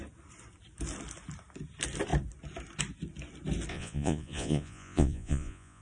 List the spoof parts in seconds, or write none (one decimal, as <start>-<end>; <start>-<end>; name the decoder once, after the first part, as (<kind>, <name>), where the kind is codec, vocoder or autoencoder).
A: 3.7-5.8 (vocoder, Vocos)